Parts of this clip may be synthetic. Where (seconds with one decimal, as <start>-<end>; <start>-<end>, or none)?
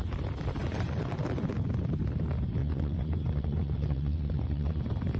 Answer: 0.6-1.1; 2.6-4.8